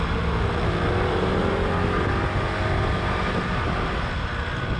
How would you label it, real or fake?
real